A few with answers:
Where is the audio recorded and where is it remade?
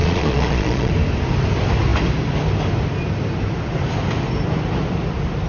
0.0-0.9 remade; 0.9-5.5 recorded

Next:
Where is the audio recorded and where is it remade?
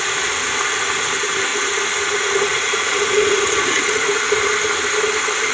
0.0-1.5 recorded; 1.5-4.2 remade; 4.2-5.5 recorded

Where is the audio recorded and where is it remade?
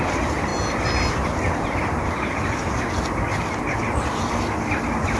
0.0-5.2 recorded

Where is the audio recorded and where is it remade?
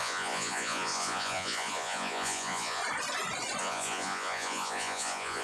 0.0-2.8 remade; 2.8-3.6 recorded; 3.6-5.4 remade